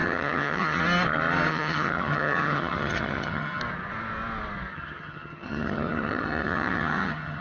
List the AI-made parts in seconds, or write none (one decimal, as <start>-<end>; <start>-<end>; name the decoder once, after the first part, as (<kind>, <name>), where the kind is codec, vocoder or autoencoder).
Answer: 0.0-0.8 (vocoder, HiFi-GAN); 1.5-3.6; 4.7-7.4